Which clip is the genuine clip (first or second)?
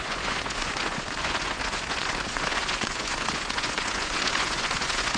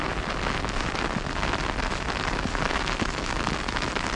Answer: second